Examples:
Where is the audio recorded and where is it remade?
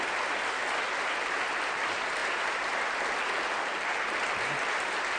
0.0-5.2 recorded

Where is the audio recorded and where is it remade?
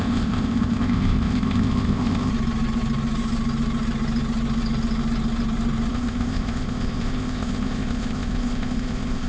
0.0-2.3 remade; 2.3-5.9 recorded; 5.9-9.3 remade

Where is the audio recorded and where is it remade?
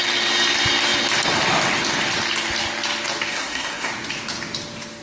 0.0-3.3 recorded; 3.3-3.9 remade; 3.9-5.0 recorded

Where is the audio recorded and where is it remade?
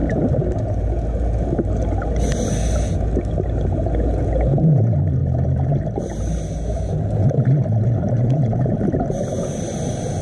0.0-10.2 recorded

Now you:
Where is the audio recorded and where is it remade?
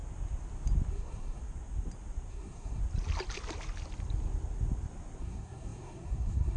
0.0-0.9 recorded; 0.9-1.4 remade; 1.4-2.3 recorded; 2.3-2.8 remade; 2.8-5.2 recorded; 5.2-6.6 remade